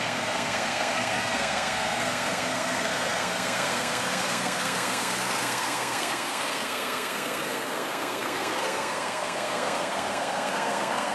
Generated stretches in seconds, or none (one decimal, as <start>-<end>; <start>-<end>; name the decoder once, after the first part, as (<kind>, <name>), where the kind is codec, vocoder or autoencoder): 0.0-11.1 (codec, SNAC)